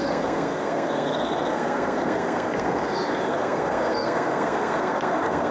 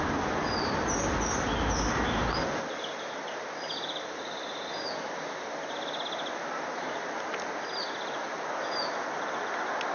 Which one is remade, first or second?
first